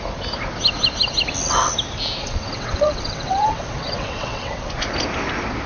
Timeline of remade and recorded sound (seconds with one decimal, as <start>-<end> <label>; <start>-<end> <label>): 0.0-2.2 recorded; 2.2-4.7 remade; 4.7-5.7 recorded